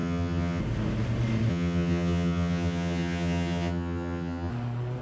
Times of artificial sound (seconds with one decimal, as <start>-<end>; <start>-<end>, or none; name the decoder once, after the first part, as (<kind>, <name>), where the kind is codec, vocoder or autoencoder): 0.0-0.6 (vocoder, HiFi-GAN); 1.5-4.5